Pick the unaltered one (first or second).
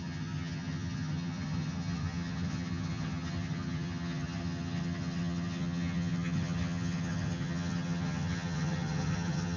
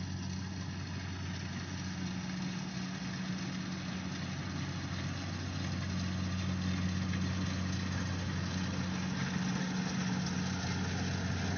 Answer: second